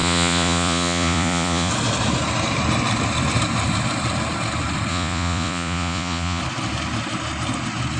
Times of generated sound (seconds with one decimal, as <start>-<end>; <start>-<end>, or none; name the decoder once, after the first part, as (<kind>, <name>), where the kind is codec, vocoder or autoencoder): 0.0-1.7 (vocoder, Vocos); 4.9-6.4